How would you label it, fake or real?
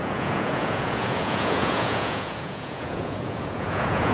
fake